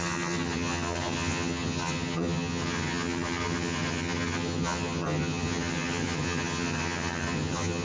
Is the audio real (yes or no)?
no